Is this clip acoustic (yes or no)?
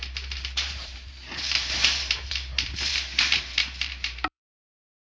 no